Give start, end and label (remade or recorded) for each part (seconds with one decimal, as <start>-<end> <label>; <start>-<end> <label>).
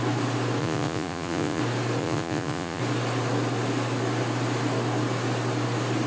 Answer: 0.0-0.6 recorded; 0.6-1.6 remade; 1.6-2.0 recorded; 2.0-2.8 remade; 2.8-6.1 recorded